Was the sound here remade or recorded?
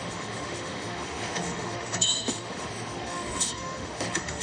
remade